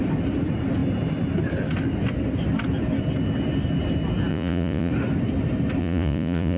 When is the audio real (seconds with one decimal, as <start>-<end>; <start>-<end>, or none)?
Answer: 0.0-4.3; 4.9-5.8